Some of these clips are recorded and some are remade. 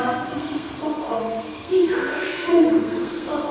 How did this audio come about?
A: remade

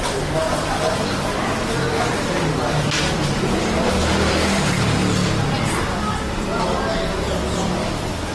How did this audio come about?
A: recorded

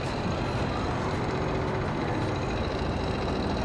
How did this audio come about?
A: recorded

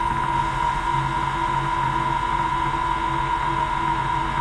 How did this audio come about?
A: recorded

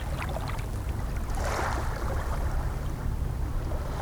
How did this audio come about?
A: recorded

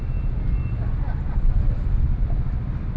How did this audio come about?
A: recorded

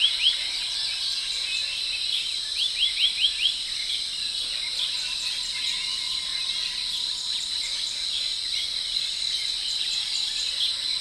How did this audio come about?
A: recorded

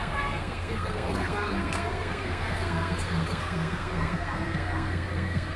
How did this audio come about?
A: remade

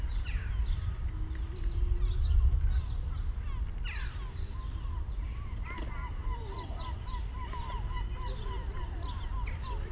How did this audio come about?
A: recorded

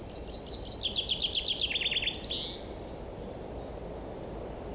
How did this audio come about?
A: recorded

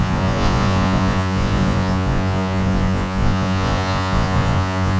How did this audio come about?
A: remade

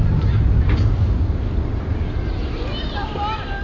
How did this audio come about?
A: recorded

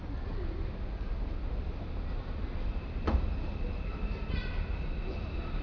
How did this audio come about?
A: recorded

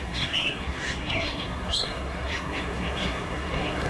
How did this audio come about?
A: remade